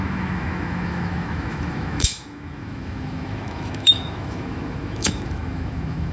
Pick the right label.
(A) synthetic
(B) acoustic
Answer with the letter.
A